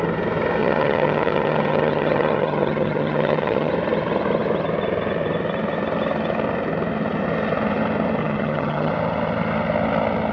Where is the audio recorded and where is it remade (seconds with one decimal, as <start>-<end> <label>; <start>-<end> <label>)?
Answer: 0.0-0.6 recorded; 0.6-3.7 remade; 3.7-8.2 recorded; 8.2-8.9 remade; 8.9-10.3 recorded